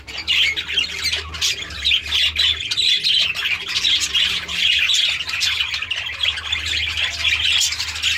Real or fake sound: real